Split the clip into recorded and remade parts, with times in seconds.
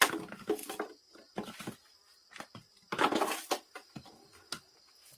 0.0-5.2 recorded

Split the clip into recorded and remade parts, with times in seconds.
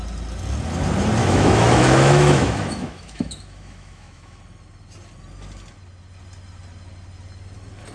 0.0-1.2 recorded; 1.2-4.4 remade; 4.4-7.9 recorded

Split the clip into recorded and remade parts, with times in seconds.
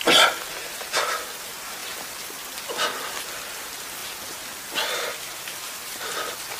0.0-6.6 recorded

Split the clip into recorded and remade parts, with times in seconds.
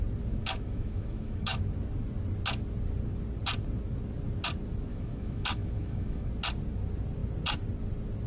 0.0-0.4 recorded; 0.4-1.6 remade; 1.6-4.9 recorded; 4.9-6.3 remade; 6.3-8.3 recorded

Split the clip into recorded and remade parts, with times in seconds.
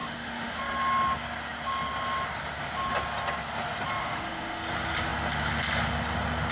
0.0-0.6 remade; 0.6-4.0 recorded; 4.0-4.6 remade; 4.6-6.5 recorded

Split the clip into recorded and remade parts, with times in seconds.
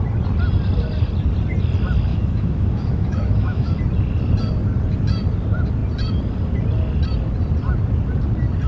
0.0-2.1 recorded; 2.1-3.7 remade; 3.7-8.7 recorded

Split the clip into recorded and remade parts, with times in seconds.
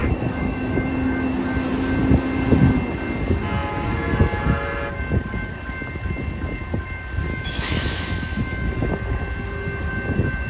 0.0-0.9 remade; 0.9-7.3 recorded; 7.3-8.9 remade; 8.9-10.5 recorded